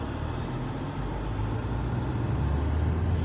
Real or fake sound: real